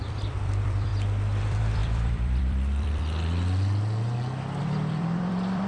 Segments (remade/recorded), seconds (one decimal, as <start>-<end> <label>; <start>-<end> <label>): 0.0-0.9 remade; 0.9-1.4 recorded; 1.4-3.0 remade; 3.0-4.6 recorded; 4.6-5.7 remade